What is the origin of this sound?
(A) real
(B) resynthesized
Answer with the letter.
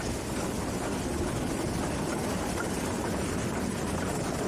A